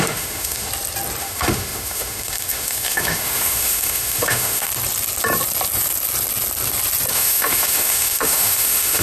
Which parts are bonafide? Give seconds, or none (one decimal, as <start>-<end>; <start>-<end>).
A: 0.7-1.2; 4.7-7.1